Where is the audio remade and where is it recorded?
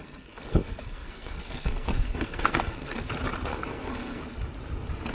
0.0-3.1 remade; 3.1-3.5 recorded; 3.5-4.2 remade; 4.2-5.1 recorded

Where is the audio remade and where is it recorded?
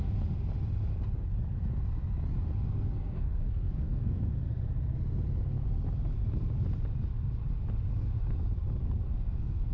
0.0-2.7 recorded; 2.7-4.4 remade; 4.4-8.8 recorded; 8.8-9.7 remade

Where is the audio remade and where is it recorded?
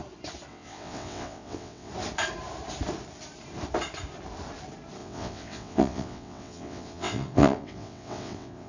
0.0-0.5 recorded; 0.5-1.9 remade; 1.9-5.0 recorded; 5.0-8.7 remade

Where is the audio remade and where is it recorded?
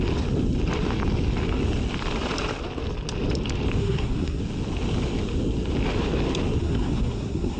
0.0-3.8 recorded; 3.8-4.4 remade; 4.4-6.6 recorded; 6.6-7.6 remade